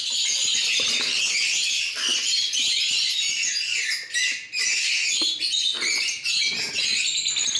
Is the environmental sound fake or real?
real